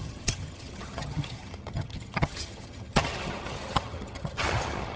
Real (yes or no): no